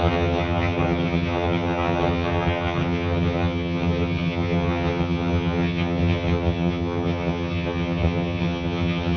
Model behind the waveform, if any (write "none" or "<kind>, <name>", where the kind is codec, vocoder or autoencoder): vocoder, HiFi-GAN